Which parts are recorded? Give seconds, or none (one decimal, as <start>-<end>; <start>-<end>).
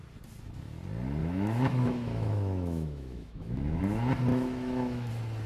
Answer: 0.0-1.2; 3.8-4.3; 5.1-5.5